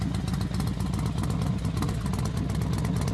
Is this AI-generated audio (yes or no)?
no